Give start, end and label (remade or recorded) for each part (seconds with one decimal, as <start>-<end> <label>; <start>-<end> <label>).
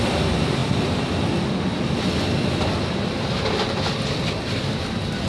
0.0-5.3 recorded